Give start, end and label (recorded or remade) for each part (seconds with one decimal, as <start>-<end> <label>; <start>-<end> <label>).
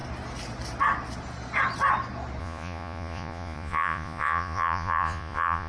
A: 0.0-2.4 recorded; 2.4-5.7 remade